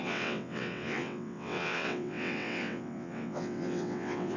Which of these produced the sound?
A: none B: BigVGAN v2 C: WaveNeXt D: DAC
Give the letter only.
C